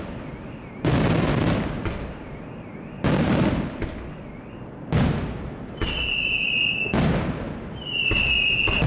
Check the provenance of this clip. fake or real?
real